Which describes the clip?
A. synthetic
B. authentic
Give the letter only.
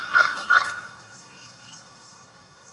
A